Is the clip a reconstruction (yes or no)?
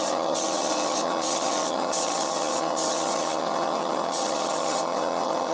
yes